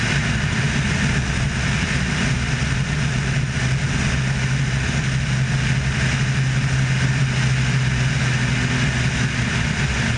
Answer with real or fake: real